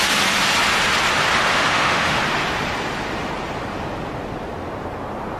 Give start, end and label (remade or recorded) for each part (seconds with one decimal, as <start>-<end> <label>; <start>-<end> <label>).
0.0-1.5 recorded; 1.5-2.2 remade; 2.2-5.4 recorded